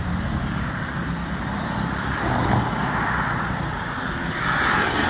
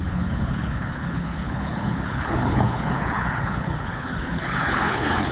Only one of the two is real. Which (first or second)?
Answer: first